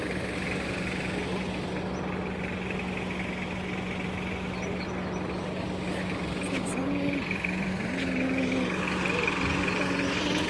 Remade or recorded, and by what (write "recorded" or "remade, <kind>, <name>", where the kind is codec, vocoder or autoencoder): recorded